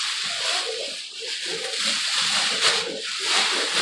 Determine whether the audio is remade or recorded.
remade